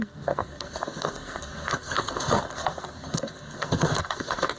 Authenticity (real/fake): fake